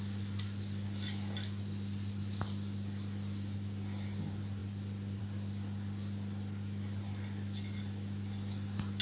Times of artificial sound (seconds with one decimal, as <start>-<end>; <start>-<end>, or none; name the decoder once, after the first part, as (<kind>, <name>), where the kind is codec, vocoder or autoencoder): none